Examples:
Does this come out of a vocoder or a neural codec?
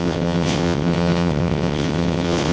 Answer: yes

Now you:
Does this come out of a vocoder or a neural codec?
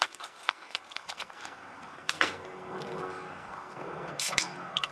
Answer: yes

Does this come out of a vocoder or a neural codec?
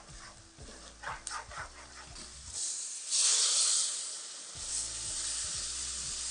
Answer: no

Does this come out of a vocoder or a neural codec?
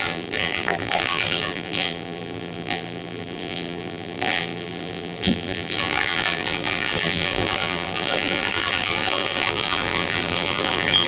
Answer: yes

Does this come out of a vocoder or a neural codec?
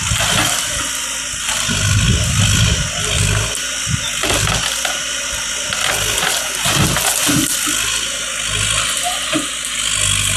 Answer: no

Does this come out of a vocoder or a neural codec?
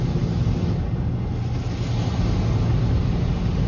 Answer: no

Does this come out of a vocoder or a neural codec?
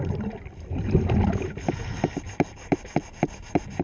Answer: no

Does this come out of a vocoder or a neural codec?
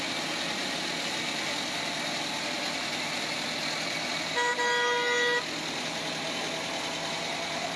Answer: no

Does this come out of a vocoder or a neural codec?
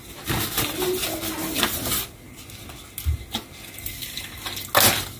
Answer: no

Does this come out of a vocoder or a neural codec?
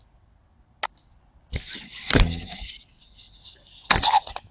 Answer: no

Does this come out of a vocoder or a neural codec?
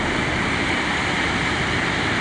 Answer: no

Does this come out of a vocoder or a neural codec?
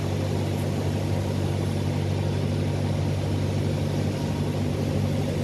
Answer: no